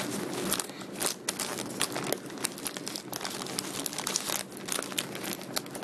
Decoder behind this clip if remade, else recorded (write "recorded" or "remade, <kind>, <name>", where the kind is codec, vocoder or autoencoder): recorded